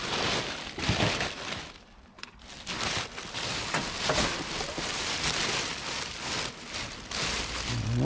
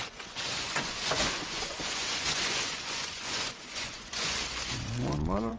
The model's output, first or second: second